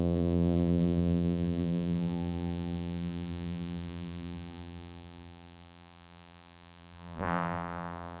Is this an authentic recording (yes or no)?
no